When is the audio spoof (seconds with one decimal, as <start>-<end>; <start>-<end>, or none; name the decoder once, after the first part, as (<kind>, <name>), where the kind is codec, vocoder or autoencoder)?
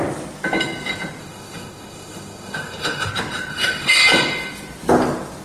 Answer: 1.2-3.1 (autoencoder, DAC-VAE); 3.5-4.0